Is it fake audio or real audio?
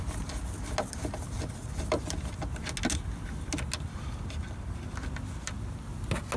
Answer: real